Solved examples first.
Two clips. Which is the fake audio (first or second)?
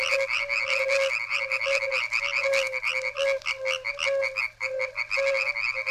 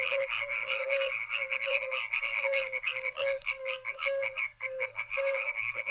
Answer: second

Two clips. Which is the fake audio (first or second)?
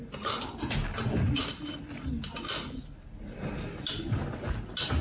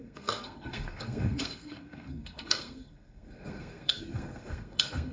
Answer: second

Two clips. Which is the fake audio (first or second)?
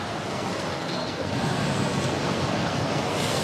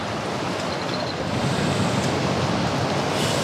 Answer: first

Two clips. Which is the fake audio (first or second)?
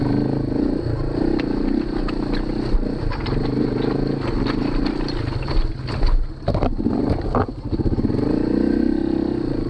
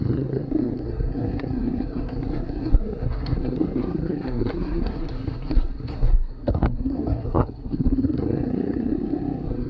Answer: second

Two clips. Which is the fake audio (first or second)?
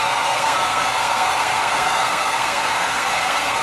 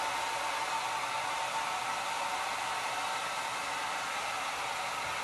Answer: first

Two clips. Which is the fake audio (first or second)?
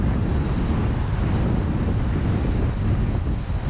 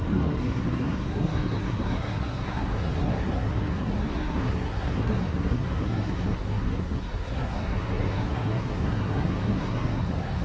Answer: second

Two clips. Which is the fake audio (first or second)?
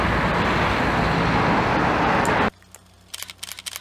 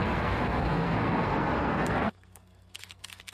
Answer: second